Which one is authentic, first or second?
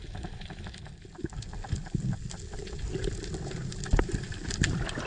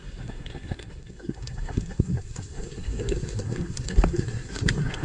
first